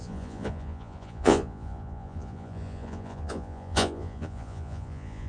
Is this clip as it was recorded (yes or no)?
no